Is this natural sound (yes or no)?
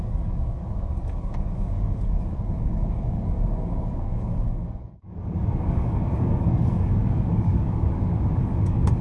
no